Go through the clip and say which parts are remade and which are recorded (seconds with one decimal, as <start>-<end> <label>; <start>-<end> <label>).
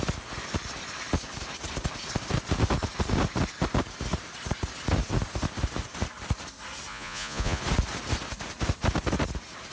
0.0-6.9 recorded; 6.9-7.6 remade; 7.6-9.7 recorded